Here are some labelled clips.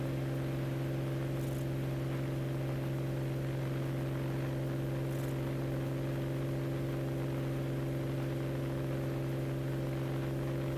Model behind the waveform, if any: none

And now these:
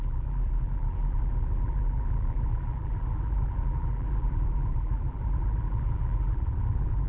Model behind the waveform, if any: vocoder, BigVGAN v2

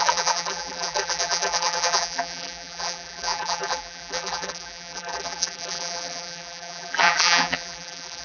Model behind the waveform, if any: vocoder, BigVGAN v2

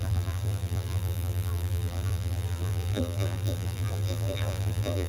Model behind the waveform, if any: vocoder, BigVGAN v2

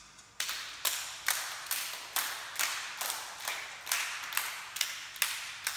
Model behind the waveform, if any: none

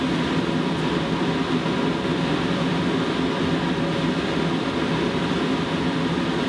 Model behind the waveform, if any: none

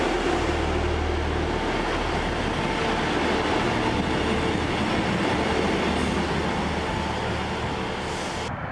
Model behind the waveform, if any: none